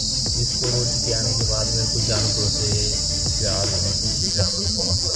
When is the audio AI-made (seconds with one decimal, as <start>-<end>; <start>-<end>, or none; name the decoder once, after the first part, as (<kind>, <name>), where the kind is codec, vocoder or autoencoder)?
4.2-5.2 (vocoder, BigVGAN v2)